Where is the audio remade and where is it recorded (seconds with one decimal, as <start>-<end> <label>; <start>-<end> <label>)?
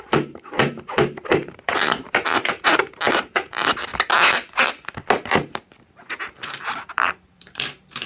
0.0-3.9 remade; 3.9-5.8 recorded; 5.8-8.1 remade